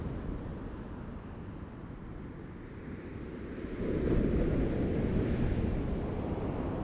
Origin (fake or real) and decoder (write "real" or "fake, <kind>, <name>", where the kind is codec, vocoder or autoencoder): real